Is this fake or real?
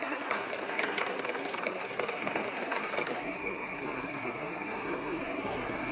fake